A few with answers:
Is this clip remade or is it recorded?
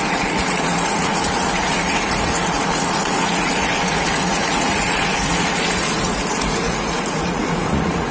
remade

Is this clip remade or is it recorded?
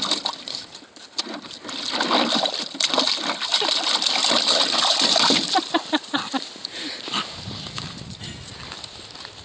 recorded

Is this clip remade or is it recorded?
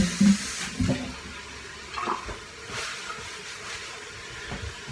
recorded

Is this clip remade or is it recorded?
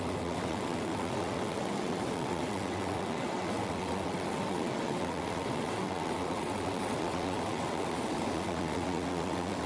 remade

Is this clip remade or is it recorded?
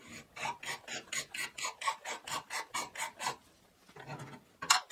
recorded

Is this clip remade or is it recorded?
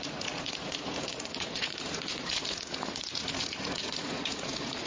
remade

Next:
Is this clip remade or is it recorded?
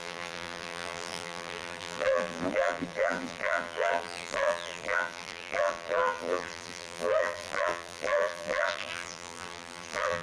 remade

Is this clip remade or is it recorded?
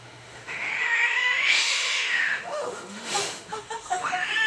remade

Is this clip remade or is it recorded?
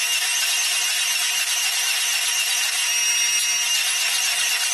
recorded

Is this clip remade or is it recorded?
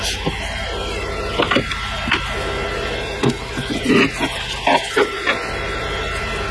recorded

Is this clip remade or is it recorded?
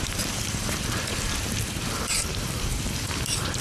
remade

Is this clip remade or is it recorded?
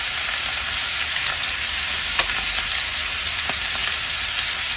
recorded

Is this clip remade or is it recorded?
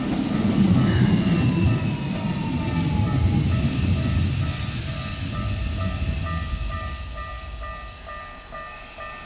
recorded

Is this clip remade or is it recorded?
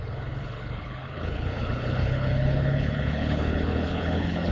remade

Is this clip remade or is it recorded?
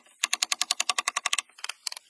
recorded